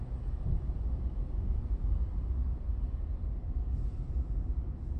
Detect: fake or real real